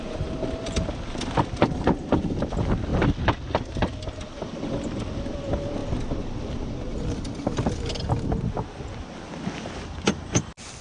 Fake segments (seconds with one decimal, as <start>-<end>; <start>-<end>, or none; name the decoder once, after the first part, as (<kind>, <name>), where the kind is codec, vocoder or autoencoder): none

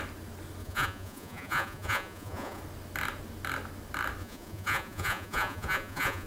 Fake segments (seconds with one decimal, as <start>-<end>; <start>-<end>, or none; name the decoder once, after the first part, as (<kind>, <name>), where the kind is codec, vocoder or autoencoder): 0.6-2.6 (vocoder, Vocos); 4.2-6.3

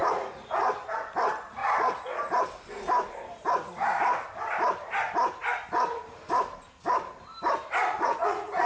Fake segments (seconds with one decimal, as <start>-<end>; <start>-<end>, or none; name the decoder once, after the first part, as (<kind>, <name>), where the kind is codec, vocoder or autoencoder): 0.0-0.6 (vocoder, Vocos); 1.6-2.2; 7.9-8.7

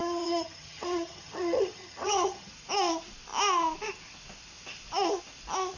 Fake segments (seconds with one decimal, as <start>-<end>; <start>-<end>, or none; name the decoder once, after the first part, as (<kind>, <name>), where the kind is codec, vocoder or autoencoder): 0.0-2.5 (vocoder, HiFi-GAN)

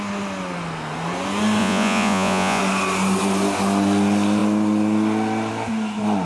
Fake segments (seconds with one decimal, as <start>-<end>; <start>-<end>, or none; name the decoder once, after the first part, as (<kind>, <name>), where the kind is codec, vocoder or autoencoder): 1.6-2.6 (vocoder, Vocos)

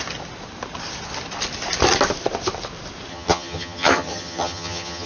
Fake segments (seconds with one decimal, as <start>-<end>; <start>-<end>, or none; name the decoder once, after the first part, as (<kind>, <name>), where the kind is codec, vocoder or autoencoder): 3.1-5.1 (vocoder, HiFi-GAN)